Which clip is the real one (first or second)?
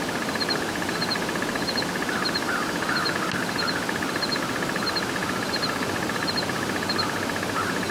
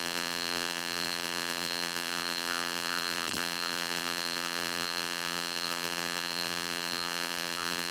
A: first